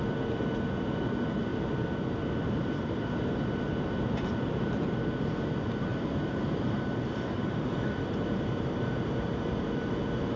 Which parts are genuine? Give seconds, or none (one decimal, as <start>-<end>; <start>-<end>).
0.0-1.5; 3.1-5.9; 9.9-10.4